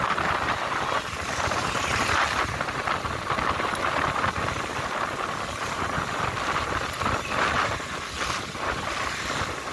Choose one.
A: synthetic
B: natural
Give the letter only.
B